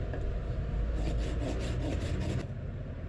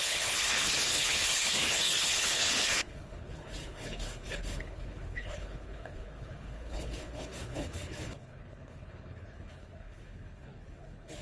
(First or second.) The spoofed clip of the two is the second